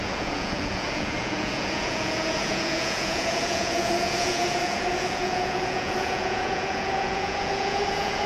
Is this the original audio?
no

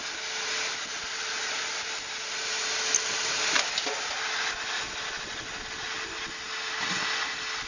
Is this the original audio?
yes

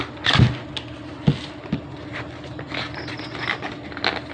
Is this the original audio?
yes